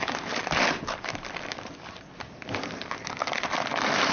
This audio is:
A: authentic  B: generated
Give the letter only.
B